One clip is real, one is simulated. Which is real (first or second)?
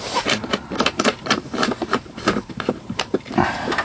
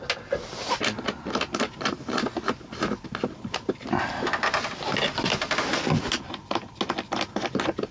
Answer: second